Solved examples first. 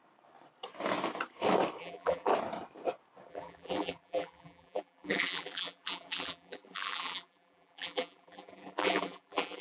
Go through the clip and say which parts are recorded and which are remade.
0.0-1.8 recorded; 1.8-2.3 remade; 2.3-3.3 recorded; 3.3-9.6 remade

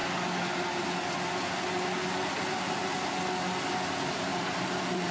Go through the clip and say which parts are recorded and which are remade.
0.0-4.3 recorded; 4.3-5.1 remade

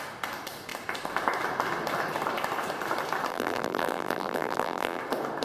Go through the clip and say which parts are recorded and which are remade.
0.0-3.3 recorded; 3.3-5.0 remade; 5.0-5.4 recorded

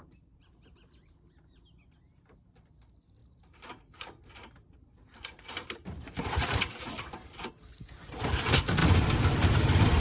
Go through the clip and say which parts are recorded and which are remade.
0.0-3.2 recorded; 3.2-7.5 remade; 7.5-8.8 recorded; 8.8-9.6 remade; 9.6-10.0 recorded

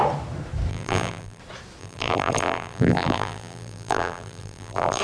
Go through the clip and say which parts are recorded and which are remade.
0.0-0.7 recorded; 0.7-1.4 remade; 1.4-1.8 recorded; 1.8-5.0 remade

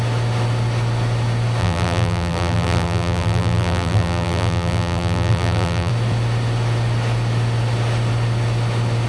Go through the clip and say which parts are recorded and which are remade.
0.0-1.6 recorded; 1.6-5.9 remade; 5.9-9.1 recorded

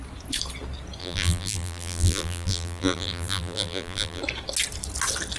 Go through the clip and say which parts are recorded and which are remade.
0.0-1.0 recorded; 1.0-4.2 remade; 4.2-5.4 recorded

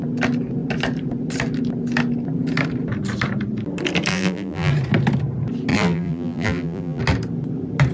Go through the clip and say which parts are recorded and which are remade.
0.0-4.1 recorded; 4.1-4.7 remade; 4.7-5.7 recorded; 5.7-7.0 remade; 7.0-7.9 recorded